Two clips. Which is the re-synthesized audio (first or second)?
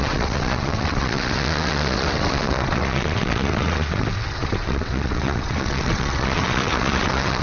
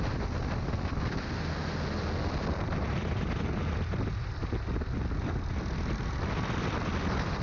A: first